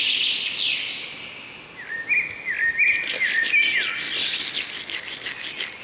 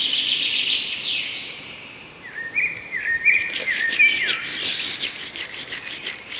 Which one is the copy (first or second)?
second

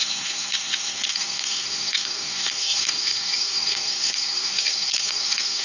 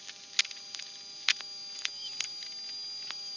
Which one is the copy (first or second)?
first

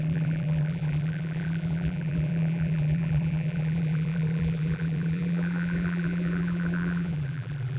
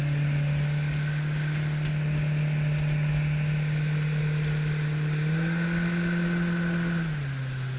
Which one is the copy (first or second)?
first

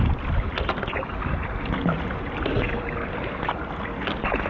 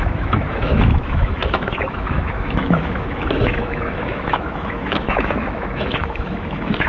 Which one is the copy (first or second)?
second